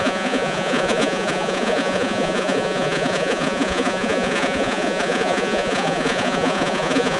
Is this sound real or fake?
fake